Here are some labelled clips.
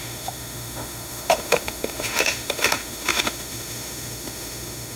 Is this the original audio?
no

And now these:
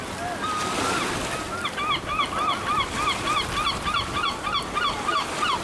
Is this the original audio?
yes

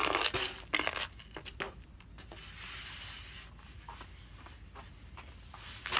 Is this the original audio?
yes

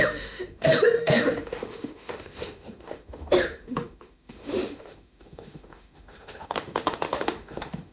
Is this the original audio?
no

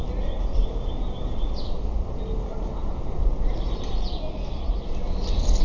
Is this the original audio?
yes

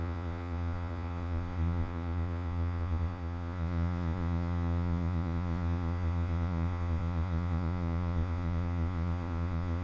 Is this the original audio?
no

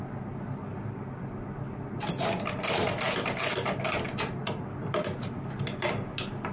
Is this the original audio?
yes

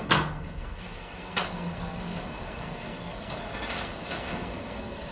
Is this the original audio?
no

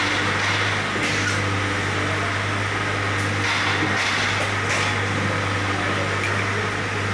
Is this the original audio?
yes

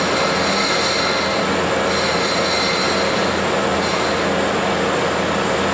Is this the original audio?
yes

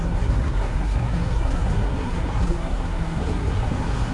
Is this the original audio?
no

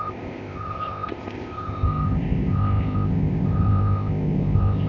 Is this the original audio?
no